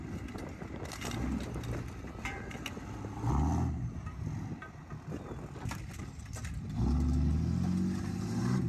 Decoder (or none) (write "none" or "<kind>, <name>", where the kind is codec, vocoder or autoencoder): none